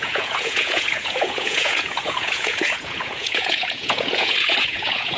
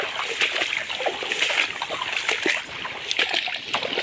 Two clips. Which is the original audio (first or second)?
second